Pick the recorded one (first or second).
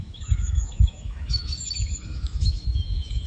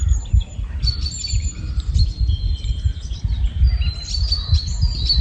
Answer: second